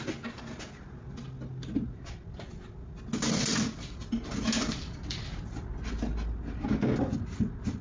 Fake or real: real